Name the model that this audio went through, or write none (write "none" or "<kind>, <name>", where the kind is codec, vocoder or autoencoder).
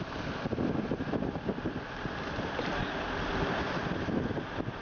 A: none